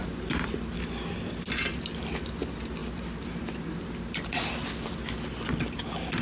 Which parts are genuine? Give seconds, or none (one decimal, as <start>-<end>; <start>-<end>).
0.0-6.2